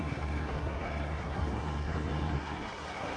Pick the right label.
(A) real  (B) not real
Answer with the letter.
B